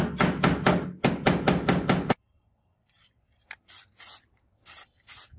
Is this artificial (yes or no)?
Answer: no